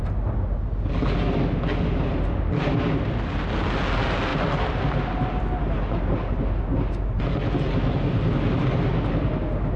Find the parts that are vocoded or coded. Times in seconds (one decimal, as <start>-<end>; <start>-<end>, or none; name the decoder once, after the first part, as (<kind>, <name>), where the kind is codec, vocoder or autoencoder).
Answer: none